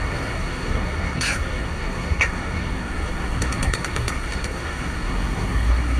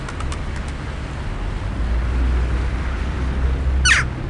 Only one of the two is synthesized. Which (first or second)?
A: first